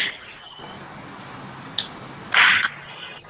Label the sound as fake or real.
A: real